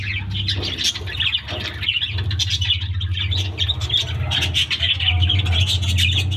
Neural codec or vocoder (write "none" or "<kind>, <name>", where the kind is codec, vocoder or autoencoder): none